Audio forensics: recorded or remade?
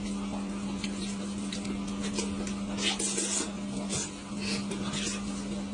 recorded